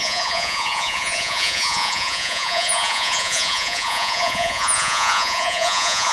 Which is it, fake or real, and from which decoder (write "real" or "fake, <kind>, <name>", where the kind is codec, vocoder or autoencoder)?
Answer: fake, vocoder, Vocos